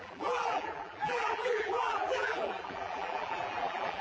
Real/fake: fake